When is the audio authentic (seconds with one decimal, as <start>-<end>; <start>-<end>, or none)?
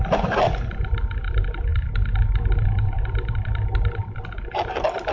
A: 0.0-5.1